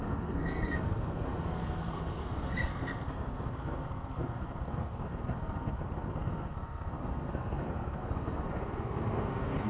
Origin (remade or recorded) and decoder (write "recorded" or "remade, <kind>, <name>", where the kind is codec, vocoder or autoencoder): remade, codec, SNAC